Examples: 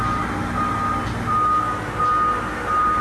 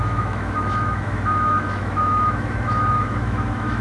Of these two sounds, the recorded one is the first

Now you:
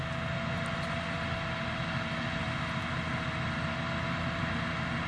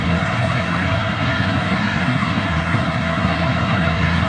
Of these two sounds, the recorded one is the first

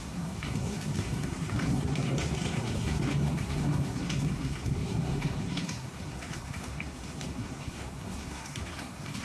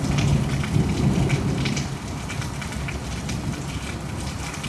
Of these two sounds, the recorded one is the second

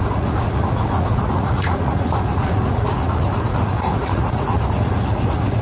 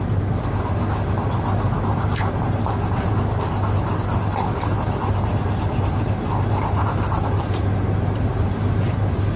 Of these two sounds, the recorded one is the second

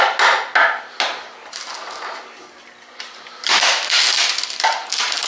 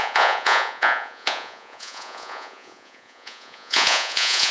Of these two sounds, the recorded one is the first